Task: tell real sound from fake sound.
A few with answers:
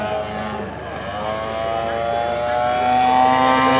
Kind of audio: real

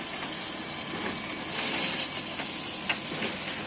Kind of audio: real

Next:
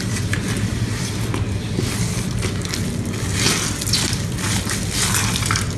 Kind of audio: real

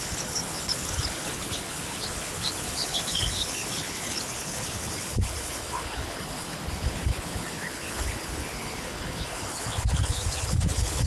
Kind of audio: fake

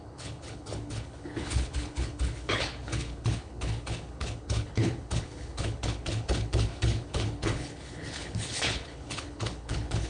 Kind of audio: fake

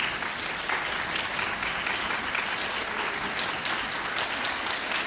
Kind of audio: real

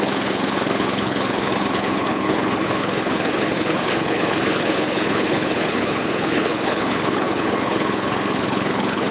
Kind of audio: fake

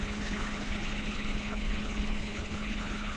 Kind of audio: fake